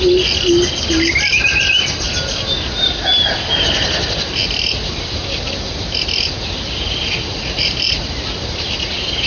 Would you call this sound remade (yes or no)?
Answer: no